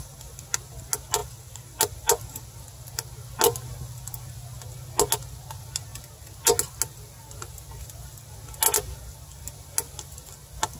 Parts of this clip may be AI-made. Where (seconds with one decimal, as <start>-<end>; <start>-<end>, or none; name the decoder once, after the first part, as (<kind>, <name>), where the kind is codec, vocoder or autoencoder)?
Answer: none

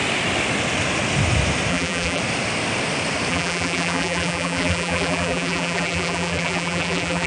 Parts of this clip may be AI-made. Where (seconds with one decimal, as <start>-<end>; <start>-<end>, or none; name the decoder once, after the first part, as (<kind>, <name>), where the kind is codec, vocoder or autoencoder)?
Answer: 1.7-2.2 (vocoder, BigVGAN v2); 3.3-7.3

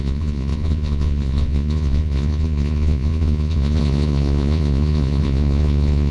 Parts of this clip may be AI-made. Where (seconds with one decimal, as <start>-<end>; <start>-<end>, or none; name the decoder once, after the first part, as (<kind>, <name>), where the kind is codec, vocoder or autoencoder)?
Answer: 0.0-6.1 (vocoder, Vocos)

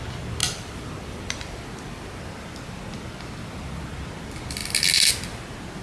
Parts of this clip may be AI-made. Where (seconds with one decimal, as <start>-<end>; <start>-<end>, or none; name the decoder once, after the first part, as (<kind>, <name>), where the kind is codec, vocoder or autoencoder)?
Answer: 0.4-3.9 (vocoder, BigVGAN v2)